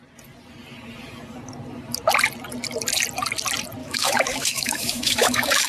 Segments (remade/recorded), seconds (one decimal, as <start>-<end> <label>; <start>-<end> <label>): 0.0-3.8 recorded; 3.8-5.7 remade